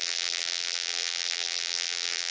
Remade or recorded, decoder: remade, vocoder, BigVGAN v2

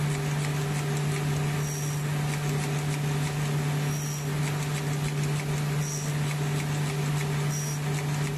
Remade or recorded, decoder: recorded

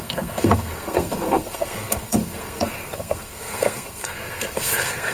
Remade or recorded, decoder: remade, codec, SNAC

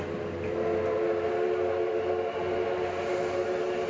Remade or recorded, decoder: recorded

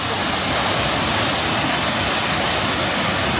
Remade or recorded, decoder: recorded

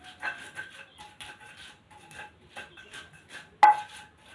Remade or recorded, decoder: recorded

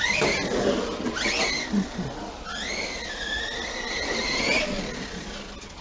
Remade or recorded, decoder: recorded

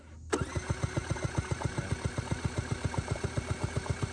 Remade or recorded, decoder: recorded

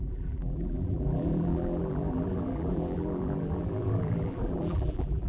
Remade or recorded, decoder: remade, vocoder, BigVGAN v2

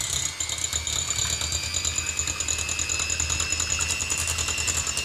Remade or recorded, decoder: recorded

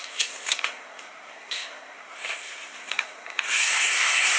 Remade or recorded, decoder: remade, codec, SNAC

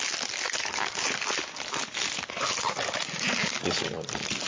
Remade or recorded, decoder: recorded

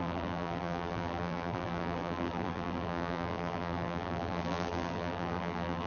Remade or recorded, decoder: remade, vocoder, BigVGAN v2